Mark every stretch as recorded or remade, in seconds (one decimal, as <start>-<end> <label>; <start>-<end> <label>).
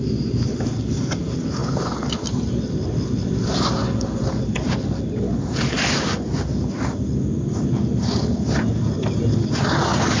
0.0-10.2 recorded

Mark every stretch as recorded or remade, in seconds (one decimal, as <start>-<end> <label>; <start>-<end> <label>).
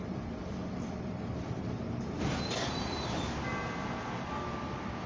0.0-5.1 recorded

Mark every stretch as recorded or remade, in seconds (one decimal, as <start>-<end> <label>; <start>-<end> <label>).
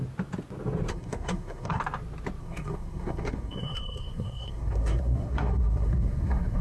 0.0-0.9 recorded; 0.9-1.8 remade; 1.8-2.4 recorded; 2.4-6.6 remade